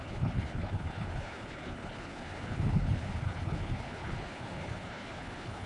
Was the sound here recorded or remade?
remade